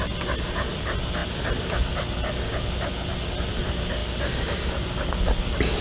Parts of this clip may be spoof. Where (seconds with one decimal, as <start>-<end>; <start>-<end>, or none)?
none